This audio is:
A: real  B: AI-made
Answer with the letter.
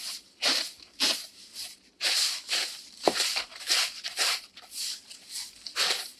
B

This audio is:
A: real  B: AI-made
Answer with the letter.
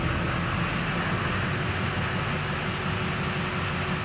A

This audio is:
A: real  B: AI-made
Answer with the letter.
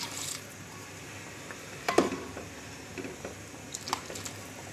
A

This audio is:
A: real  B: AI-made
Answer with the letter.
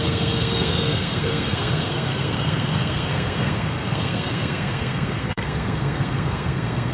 B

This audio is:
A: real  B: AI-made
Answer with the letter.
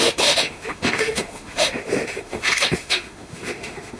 B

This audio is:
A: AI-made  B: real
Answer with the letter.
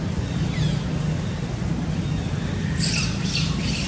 B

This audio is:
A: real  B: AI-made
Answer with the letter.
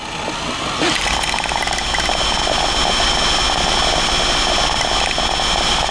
A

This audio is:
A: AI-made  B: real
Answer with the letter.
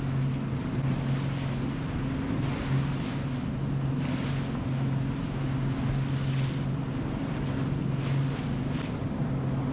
B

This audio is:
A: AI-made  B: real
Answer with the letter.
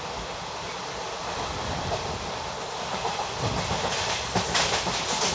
A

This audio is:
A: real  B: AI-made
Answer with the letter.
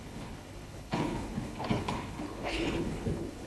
B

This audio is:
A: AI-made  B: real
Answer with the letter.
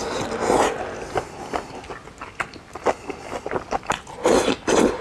B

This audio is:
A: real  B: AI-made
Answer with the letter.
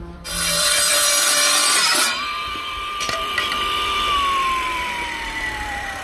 B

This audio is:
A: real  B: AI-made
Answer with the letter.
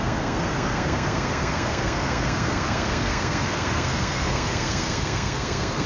B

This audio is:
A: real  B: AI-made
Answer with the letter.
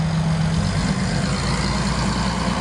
A